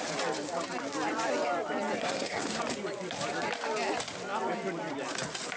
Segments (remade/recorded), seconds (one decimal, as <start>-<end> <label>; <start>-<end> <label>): 0.0-2.0 recorded; 2.0-2.6 remade; 2.6-5.6 recorded